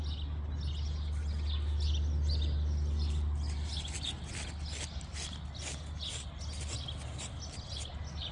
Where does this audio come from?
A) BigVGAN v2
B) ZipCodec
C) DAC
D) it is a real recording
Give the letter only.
D